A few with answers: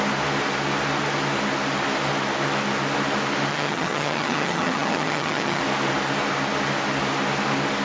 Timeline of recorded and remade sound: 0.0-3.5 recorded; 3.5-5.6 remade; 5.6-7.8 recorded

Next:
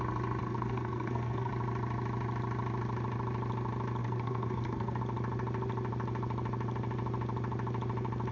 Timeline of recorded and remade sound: 0.0-0.4 recorded; 0.4-1.5 remade; 1.5-4.0 recorded; 4.0-5.0 remade; 5.0-8.3 recorded

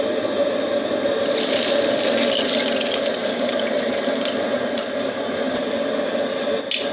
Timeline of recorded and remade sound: 0.0-3.2 recorded; 3.2-5.7 remade; 5.7-6.9 recorded

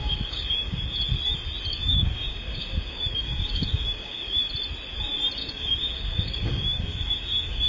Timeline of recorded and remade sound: 0.0-0.8 remade; 0.8-1.7 recorded; 1.7-4.5 remade; 4.5-5.4 recorded; 5.4-7.7 remade

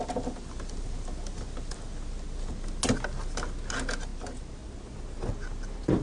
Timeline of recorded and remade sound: 0.0-6.0 recorded

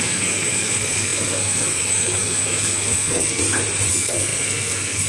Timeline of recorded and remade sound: 0.0-3.4 remade; 3.4-3.9 recorded; 3.9-5.1 remade

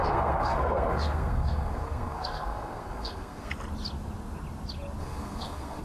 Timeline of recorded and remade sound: 0.0-3.5 remade; 3.5-5.0 recorded; 5.0-5.8 remade

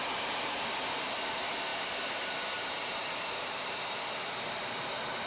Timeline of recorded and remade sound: 0.0-5.3 recorded